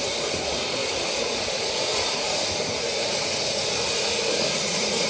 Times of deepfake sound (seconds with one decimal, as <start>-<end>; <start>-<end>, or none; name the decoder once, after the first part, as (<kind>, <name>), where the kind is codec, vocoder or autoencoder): 0.0-5.1 (vocoder, Vocos)